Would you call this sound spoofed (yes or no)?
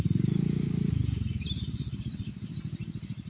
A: no